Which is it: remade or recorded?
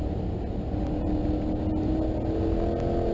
recorded